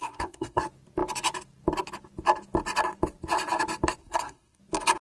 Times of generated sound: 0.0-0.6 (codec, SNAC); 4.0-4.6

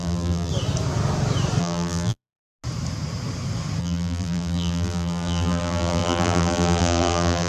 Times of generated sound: 0.0-0.5 (vocoder, BigVGAN v2); 1.6-2.4; 3.8-7.5

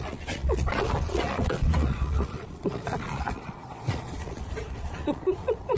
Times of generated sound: 0.0-5.8 (vocoder, Vocos)